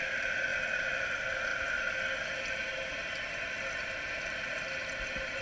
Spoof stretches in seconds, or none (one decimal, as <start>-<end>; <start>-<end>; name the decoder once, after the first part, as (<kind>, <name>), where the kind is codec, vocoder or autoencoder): none